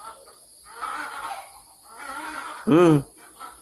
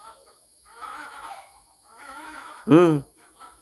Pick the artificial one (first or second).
second